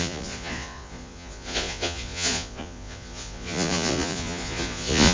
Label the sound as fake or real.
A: fake